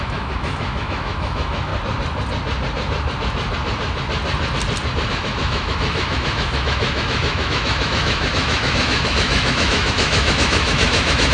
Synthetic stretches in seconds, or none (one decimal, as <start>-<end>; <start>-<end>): 0.0-1.7; 5.1-11.3